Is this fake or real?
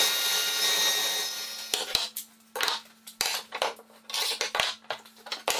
real